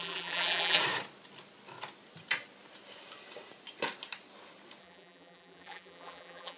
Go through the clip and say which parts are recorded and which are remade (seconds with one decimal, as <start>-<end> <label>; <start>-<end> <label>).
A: 0.0-0.8 remade; 0.8-4.8 recorded; 4.8-6.6 remade